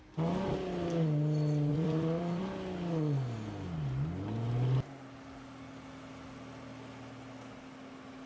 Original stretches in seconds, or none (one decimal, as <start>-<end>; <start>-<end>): 0.0-1.7; 2.4-8.3